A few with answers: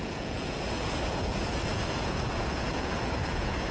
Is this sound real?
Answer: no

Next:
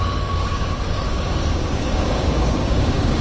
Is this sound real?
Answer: no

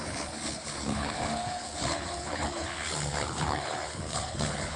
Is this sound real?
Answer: no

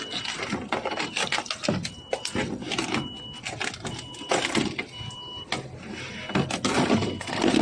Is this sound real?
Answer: yes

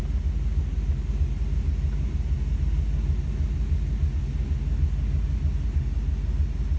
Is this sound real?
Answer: yes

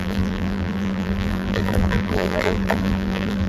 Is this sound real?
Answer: no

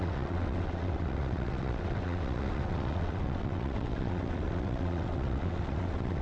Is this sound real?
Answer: no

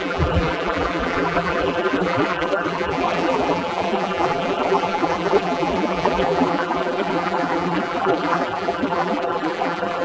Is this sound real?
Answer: no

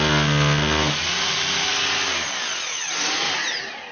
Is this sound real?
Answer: yes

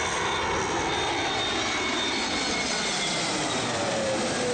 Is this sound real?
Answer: no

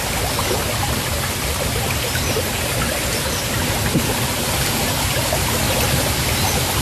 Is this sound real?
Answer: yes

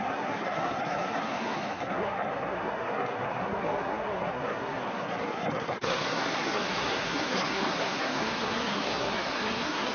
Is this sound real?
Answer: no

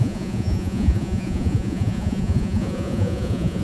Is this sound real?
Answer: no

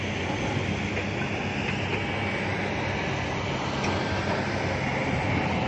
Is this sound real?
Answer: yes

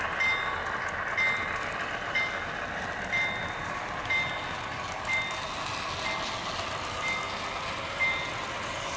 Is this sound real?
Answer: yes